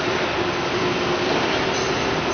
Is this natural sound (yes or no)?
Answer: yes